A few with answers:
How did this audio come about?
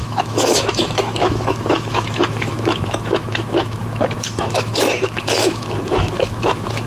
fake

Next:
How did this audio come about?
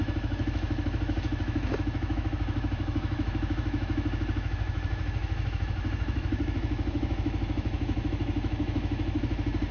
fake